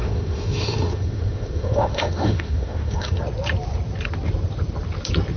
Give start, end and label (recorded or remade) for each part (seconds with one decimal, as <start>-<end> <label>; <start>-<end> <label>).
0.0-3.2 remade; 3.2-5.4 recorded